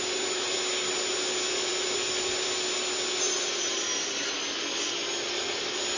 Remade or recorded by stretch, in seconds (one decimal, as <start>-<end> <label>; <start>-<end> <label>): 0.0-6.0 recorded